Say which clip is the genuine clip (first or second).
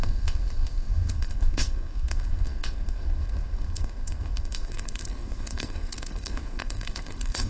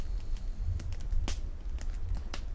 second